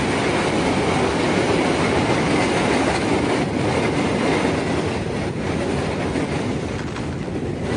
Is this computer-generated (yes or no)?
no